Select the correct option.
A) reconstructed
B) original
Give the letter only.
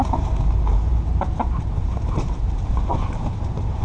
A